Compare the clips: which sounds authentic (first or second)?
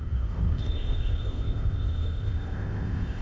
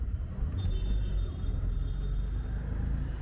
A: second